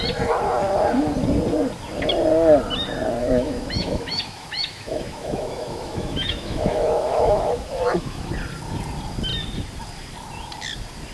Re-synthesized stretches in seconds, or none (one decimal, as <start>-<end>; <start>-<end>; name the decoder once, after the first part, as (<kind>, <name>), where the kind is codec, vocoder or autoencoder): 3.2-8.3 (autoencoder, DAC-VAE)